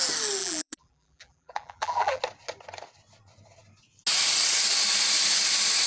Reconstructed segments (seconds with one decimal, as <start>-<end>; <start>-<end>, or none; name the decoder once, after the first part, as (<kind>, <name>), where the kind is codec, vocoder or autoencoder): 0.4-2.2 (vocoder, BigVGAN v2)